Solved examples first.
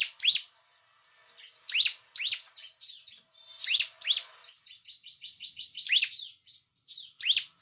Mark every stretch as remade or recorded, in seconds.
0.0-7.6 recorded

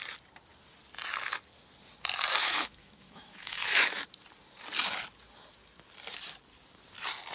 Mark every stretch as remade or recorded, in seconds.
0.0-2.4 recorded; 2.4-4.0 remade; 4.0-7.3 recorded

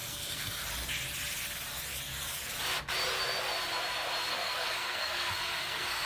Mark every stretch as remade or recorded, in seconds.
0.0-0.6 remade; 0.6-4.3 recorded; 4.3-6.1 remade

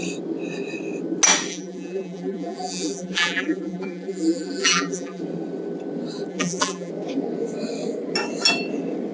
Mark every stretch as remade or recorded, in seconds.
0.0-1.5 recorded; 1.5-5.2 remade; 5.2-6.3 recorded; 6.3-6.9 remade; 6.9-9.1 recorded

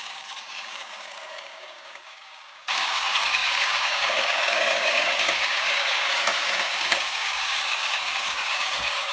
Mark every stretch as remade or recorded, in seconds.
0.0-9.1 remade

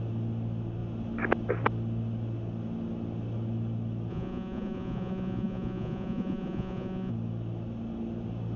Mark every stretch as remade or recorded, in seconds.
0.0-4.1 recorded; 4.1-7.1 remade; 7.1-8.6 recorded

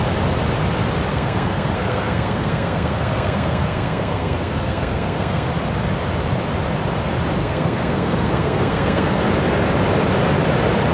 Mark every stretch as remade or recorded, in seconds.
0.0-1.1 recorded; 1.1-5.5 remade; 5.5-7.4 recorded; 7.4-9.2 remade; 9.2-10.9 recorded

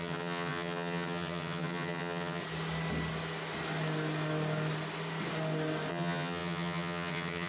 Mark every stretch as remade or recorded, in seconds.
0.0-2.4 remade; 2.4-5.9 recorded; 5.9-7.5 remade